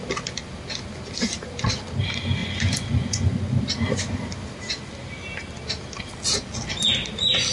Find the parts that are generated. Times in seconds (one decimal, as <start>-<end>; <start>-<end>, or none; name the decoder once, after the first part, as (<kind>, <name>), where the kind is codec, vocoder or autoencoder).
2.4-3.6 (vocoder, Vocos)